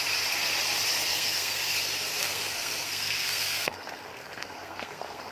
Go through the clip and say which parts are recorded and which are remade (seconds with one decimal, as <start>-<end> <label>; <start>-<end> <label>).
0.0-1.1 recorded; 1.1-1.8 remade; 1.8-2.2 recorded; 2.2-5.3 remade